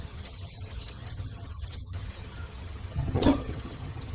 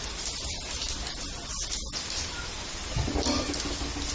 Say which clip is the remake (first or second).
first